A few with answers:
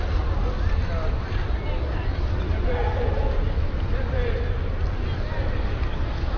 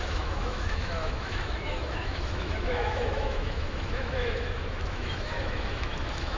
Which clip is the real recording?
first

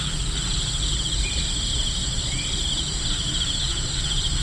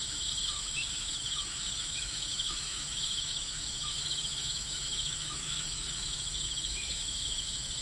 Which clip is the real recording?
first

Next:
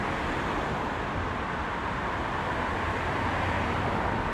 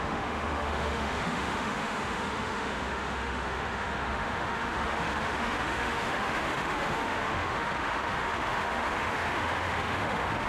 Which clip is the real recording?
first